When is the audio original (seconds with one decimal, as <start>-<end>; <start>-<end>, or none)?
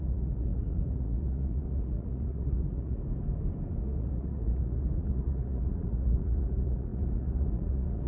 3.0-3.8